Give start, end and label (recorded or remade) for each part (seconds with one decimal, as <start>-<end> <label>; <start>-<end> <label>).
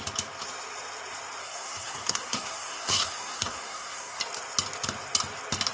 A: 0.0-1.4 recorded; 1.4-4.2 remade; 4.2-5.7 recorded